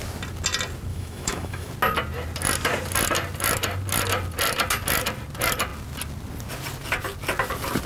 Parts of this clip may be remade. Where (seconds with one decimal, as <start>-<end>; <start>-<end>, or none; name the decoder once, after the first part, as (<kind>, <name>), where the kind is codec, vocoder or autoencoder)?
0.9-1.7 (autoencoder, DAC-VAE)